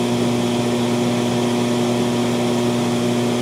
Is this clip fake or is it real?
real